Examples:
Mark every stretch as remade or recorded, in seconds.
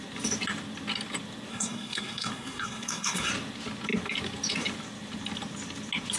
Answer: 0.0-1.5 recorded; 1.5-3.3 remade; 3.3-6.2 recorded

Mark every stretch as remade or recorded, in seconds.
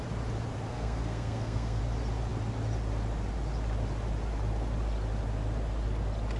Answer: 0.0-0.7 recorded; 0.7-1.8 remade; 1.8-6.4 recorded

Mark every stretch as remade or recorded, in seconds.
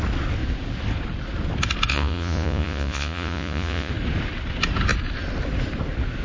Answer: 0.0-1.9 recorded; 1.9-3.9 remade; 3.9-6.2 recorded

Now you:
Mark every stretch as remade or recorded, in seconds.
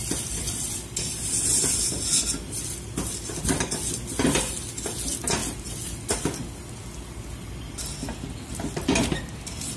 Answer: 0.0-9.8 recorded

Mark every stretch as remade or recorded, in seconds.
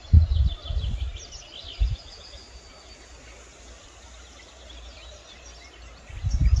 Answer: 0.0-6.6 recorded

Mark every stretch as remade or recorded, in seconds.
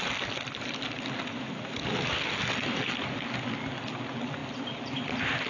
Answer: 0.0-5.5 recorded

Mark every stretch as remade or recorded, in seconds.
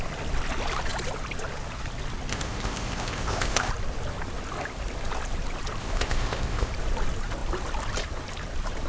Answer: 0.0-2.3 recorded; 2.3-3.7 remade; 3.7-5.8 recorded; 5.8-6.7 remade; 6.7-8.9 recorded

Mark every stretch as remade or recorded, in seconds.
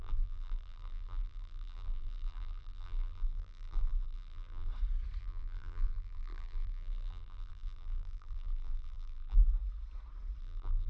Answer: 0.0-4.7 remade; 4.7-5.2 recorded; 5.2-9.4 remade; 9.4-10.4 recorded; 10.4-10.9 remade